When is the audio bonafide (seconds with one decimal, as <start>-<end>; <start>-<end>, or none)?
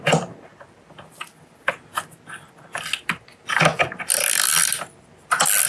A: 0.0-5.7